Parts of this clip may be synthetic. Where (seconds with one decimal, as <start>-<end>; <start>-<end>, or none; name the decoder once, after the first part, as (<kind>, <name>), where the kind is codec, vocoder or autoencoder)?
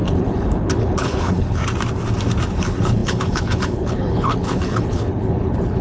0.0-1.6 (codec, HILCodec); 2.5-5.8